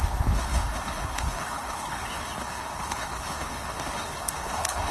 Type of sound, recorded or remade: remade